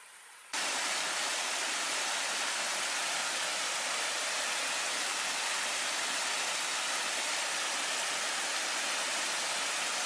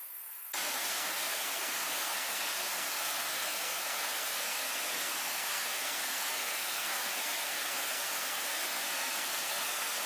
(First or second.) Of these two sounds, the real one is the first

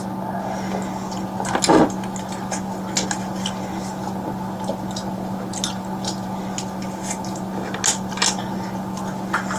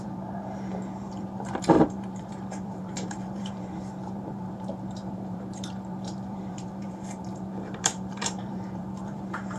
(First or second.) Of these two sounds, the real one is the first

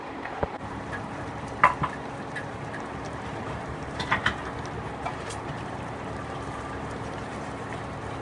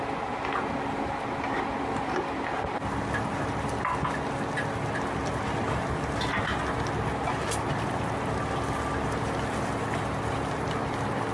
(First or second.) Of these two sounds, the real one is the second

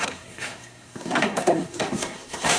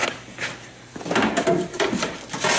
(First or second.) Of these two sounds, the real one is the second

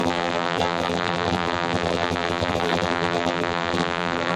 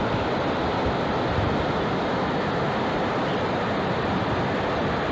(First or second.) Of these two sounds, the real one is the second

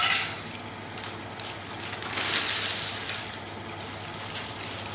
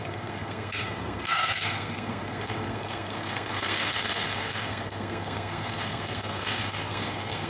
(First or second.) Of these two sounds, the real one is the first